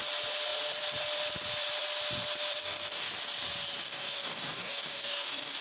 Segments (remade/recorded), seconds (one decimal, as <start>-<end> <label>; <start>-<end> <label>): 0.0-2.6 recorded; 2.6-3.1 remade; 3.1-3.8 recorded; 3.8-5.6 remade